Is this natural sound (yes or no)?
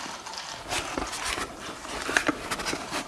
no